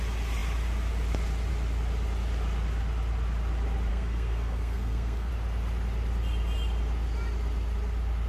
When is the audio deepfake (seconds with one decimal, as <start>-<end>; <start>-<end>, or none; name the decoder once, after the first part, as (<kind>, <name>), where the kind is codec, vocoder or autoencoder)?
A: 3.9-5.3 (codec, SNAC)